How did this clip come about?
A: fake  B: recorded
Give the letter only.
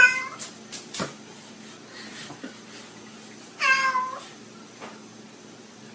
B